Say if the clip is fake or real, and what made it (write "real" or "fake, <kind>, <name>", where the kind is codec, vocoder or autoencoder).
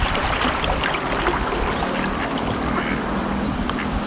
real